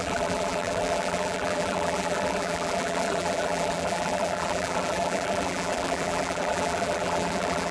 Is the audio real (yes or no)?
no